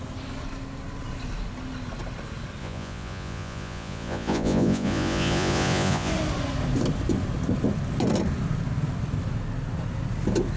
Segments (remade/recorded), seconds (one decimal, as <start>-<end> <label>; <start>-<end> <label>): 0.0-2.6 recorded; 2.6-6.1 remade; 6.1-10.6 recorded